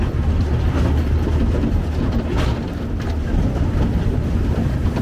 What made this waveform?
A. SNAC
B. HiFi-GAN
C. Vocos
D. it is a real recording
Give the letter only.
D